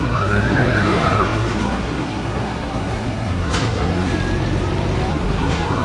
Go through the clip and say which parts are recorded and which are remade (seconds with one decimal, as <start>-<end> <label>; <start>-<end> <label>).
0.0-4.1 remade; 4.1-5.1 recorded; 5.1-5.8 remade